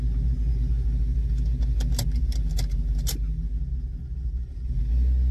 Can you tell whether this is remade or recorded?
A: recorded